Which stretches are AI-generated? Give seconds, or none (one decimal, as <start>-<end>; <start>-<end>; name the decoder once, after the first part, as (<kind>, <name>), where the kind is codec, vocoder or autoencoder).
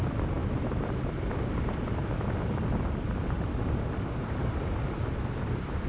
none